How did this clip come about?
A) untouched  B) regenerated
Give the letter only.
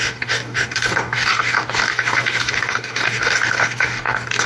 B